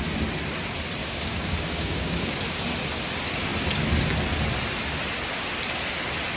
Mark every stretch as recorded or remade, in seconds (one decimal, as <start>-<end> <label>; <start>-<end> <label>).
0.0-1.0 recorded; 1.0-2.6 remade; 2.6-6.4 recorded